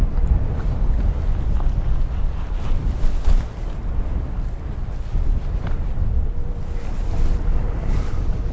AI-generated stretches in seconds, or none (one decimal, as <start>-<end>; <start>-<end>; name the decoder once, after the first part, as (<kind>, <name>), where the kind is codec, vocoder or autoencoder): 0.0-1.0 (vocoder, BigVGAN v2); 7.5-8.1